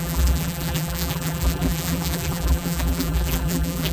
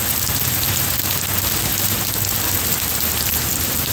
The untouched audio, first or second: second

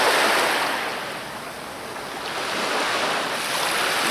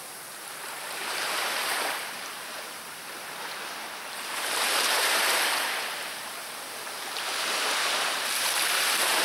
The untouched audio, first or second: first